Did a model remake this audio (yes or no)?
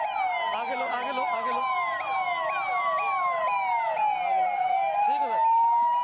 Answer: no